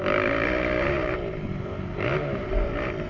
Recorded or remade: remade